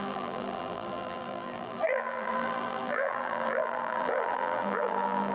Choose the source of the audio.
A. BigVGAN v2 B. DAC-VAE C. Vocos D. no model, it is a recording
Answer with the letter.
A